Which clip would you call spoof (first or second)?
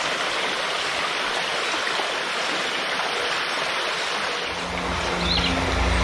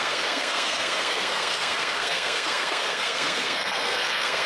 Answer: second